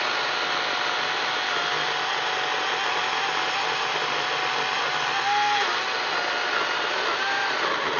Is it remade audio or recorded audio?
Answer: recorded